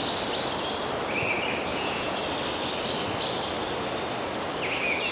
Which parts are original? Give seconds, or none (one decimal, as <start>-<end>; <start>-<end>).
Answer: 0.0-1.7; 2.2-5.1